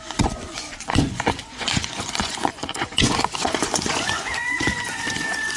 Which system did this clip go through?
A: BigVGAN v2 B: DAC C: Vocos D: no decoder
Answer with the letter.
C